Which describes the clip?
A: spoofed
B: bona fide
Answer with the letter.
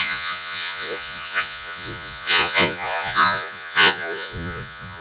A